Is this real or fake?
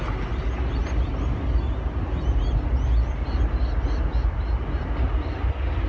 real